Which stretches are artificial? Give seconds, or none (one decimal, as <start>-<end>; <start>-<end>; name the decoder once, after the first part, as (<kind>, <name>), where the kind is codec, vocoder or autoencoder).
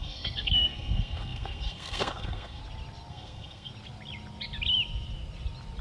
0.0-2.6 (codec, SNAC); 3.1-3.7